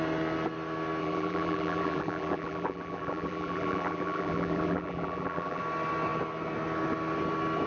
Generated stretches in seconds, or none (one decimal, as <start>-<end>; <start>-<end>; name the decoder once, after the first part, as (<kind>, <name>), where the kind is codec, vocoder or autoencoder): 1.0-5.6 (vocoder, BigVGAN v2)